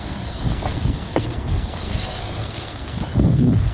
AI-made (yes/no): yes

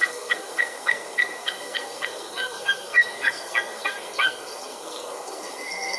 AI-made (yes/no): yes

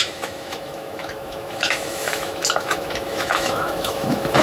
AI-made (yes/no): yes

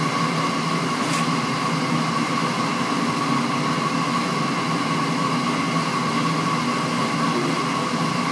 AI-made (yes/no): no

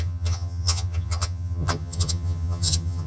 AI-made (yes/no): yes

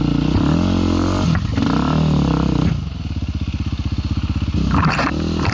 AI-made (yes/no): no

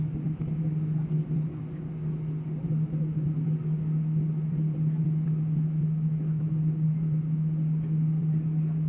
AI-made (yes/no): no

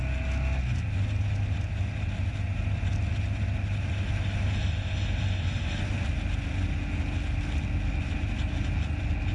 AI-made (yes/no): no